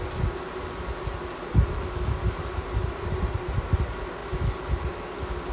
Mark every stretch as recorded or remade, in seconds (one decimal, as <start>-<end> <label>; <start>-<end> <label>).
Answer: 0.0-5.5 recorded

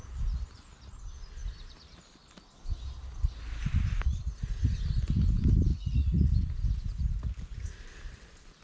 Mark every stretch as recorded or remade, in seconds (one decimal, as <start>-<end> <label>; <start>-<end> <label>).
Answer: 0.0-5.7 recorded; 5.7-6.3 remade; 6.3-8.6 recorded

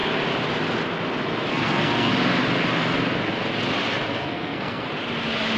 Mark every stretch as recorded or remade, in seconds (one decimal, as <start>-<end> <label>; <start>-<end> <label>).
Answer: 0.0-1.5 recorded; 1.5-2.1 remade; 2.1-4.1 recorded; 4.1-4.9 remade; 4.9-5.6 recorded

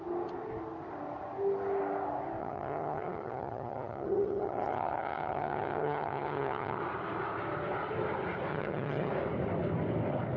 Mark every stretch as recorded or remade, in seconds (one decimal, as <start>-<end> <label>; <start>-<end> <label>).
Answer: 0.0-2.4 recorded; 2.4-6.8 remade; 6.8-8.5 recorded; 8.5-9.1 remade; 9.1-10.4 recorded

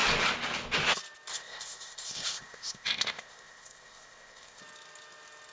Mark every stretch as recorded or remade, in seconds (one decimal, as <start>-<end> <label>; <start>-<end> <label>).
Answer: 0.0-1.3 recorded; 1.3-4.6 remade; 4.6-5.5 recorded